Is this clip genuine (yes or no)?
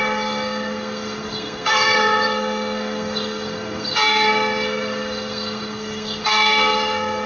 no